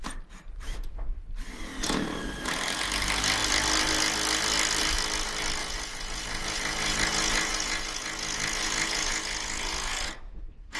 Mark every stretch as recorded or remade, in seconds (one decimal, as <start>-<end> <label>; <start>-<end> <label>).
0.0-5.6 recorded; 5.6-10.8 remade